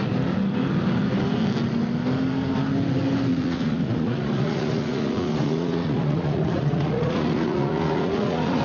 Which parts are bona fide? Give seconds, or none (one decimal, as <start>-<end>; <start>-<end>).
0.0-3.3